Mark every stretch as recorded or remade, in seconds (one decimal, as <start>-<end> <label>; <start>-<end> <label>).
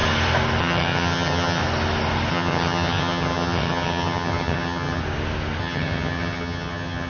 0.0-0.6 recorded; 0.6-1.6 remade; 1.6-2.3 recorded; 2.3-5.0 remade; 5.0-5.6 recorded; 5.6-7.1 remade